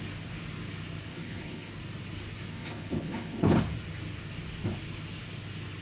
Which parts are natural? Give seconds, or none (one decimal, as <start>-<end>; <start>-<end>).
0.0-1.1; 1.7-2.5; 3.6-5.8